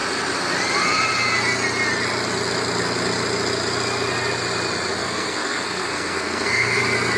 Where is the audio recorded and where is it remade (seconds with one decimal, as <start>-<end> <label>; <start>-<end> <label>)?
0.0-5.0 recorded; 5.0-6.8 remade; 6.8-7.2 recorded